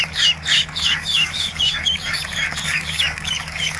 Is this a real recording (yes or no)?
no